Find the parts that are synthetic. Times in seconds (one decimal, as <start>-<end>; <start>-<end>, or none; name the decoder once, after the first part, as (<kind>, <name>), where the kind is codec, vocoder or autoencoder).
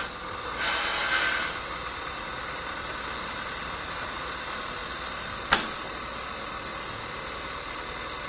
none